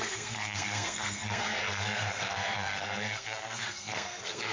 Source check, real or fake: fake